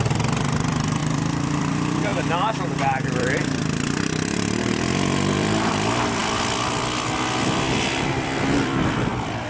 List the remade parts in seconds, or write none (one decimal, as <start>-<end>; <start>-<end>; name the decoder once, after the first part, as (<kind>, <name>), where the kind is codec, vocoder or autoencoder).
0.0-9.5 (vocoder, BigVGAN v2)